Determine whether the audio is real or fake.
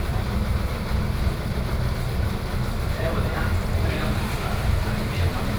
fake